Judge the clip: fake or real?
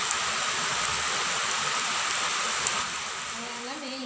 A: real